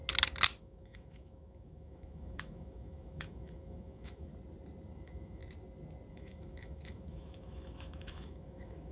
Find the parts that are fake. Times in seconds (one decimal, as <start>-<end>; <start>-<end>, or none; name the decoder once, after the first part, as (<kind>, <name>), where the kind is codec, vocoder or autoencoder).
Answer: 0.6-4.3 (autoencoder, DAC-VAE); 4.9-5.4; 6.1-8.9